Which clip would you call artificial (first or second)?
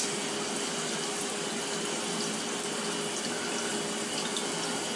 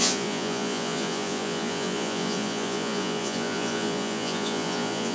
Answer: second